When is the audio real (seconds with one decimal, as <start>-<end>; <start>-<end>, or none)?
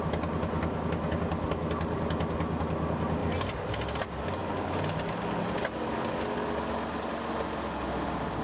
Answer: 0.0-8.4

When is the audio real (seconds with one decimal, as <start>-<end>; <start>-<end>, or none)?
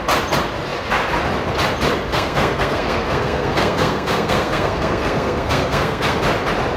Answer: 0.0-2.1; 6.2-6.8